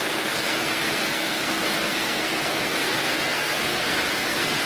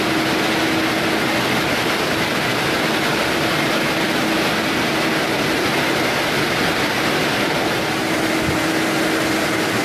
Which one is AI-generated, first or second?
first